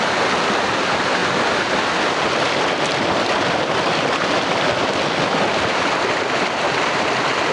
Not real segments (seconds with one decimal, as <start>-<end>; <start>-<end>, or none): none